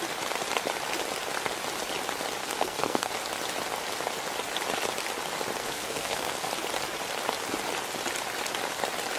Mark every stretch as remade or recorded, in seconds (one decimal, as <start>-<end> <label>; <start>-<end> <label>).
0.0-2.4 recorded; 2.4-3.1 remade; 3.1-5.6 recorded; 5.6-6.5 remade; 6.5-9.2 recorded